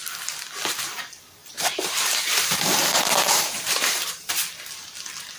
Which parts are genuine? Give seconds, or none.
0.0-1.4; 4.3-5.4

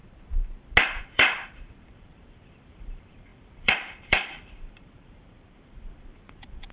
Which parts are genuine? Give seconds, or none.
0.0-1.0

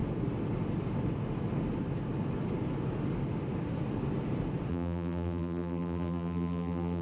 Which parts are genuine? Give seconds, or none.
0.0-4.7